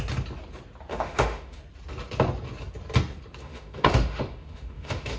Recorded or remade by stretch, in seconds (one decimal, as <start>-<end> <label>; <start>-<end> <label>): 0.0-0.9 recorded; 0.9-1.6 remade; 1.6-3.4 recorded; 3.4-5.2 remade